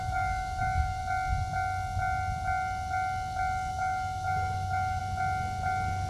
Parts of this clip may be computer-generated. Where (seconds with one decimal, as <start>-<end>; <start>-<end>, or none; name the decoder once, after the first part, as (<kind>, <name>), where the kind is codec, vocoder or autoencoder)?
0.0-1.0 (autoencoder, DAC-VAE); 3.7-5.0